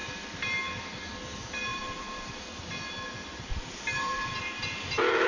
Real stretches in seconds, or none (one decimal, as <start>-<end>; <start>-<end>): 0.0-1.7; 2.4-3.5; 4.4-5.3